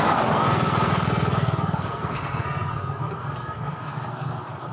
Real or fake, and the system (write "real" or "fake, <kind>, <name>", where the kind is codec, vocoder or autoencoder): fake, codec, SNAC